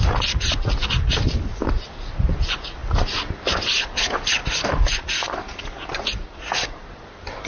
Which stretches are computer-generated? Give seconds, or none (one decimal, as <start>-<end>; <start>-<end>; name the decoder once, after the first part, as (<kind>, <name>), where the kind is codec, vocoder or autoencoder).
none